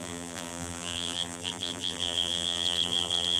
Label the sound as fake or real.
fake